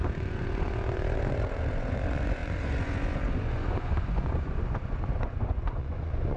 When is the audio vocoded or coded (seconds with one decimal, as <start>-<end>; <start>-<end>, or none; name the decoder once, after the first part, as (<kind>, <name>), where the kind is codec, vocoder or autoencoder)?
0.0-6.4 (vocoder, Vocos)